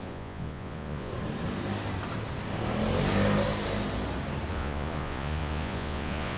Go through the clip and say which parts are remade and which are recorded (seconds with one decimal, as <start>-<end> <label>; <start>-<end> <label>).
0.0-1.1 remade; 1.1-4.5 recorded; 4.5-6.4 remade